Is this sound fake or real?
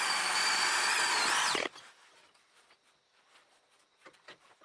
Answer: fake